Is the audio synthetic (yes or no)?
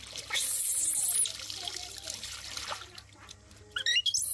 no